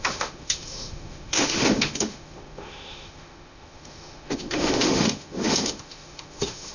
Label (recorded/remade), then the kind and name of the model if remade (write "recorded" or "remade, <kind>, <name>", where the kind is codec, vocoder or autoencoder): remade, autoencoder, DAC-VAE